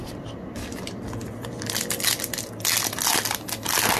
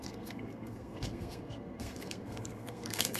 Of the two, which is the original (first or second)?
first